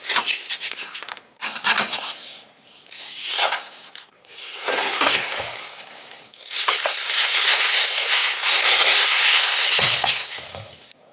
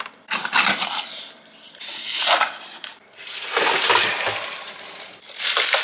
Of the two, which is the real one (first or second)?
second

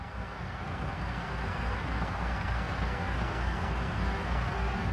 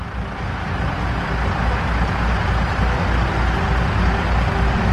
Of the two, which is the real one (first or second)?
second